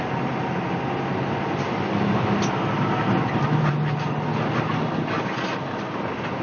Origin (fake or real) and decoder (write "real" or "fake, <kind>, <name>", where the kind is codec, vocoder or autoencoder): real